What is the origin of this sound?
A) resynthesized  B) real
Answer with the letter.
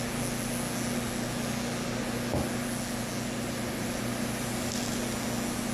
B